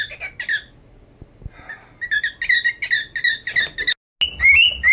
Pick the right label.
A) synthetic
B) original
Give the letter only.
B